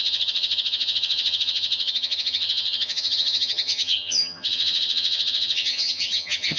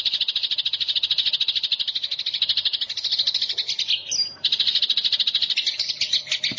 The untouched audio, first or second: second